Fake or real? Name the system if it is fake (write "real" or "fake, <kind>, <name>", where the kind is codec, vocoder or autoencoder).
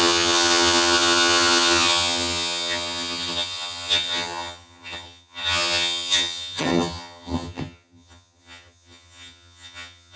fake, vocoder, HiFi-GAN